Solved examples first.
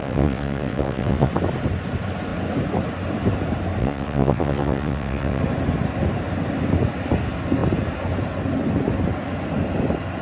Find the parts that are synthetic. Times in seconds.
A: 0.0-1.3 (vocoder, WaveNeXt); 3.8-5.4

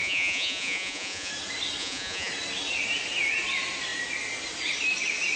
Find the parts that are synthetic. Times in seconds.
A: 0.0-1.3 (vocoder, Vocos); 1.8-2.3